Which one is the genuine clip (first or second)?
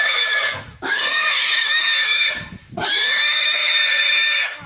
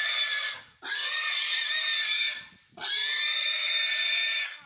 second